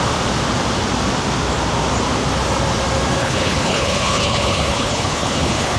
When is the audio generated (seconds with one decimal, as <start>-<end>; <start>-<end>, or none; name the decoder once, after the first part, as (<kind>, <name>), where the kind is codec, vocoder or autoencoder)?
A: 3.2-5.8 (codec, HILCodec)